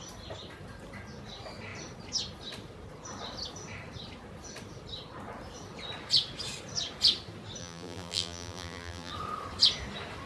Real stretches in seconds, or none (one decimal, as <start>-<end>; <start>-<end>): 0.0-7.6; 9.1-10.3